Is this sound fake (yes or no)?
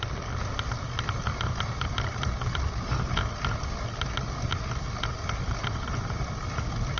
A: no